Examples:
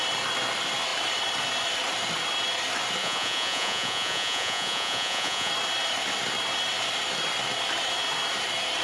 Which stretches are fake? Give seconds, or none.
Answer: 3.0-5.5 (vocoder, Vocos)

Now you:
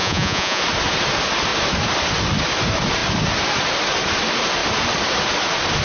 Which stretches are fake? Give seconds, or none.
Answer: 0.0-0.6 (vocoder, Vocos)